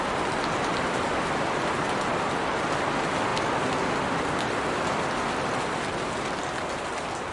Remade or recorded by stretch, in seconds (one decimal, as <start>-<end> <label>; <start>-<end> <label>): 0.0-7.3 recorded